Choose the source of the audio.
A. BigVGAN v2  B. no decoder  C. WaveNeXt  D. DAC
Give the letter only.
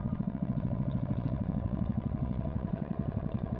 C